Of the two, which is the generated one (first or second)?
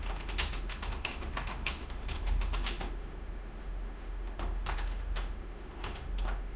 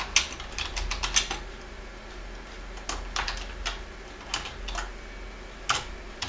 first